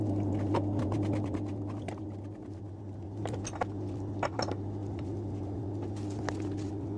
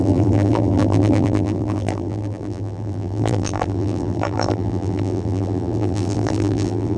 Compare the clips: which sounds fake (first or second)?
second